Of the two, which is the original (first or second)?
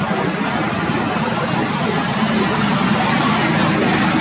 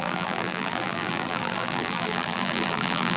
first